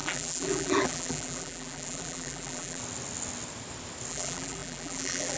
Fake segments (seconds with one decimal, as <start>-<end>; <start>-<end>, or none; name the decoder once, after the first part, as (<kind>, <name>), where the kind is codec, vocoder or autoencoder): 0.0-2.8 (vocoder, BigVGAN v2); 4.1-5.4